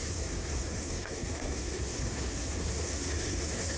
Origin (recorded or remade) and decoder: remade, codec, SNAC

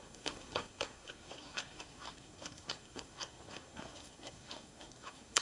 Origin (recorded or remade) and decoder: remade, codec, SNAC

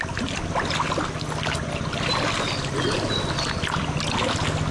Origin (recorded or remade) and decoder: recorded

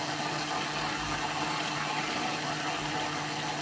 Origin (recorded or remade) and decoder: recorded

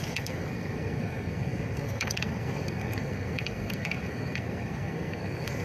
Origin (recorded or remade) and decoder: remade, codec, SNAC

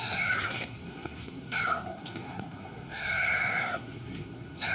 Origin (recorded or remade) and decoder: remade, codec, SNAC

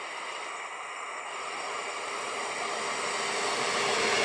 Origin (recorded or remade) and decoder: recorded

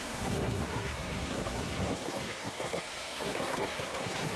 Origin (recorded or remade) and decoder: remade, codec, SNAC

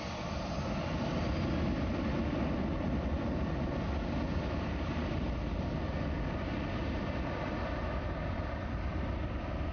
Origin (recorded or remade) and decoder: recorded